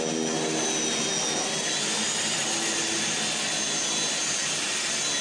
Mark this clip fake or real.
real